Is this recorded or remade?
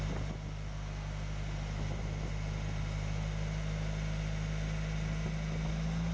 recorded